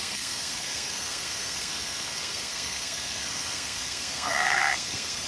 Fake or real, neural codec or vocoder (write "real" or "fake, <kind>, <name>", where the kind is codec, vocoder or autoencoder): fake, codec, SNAC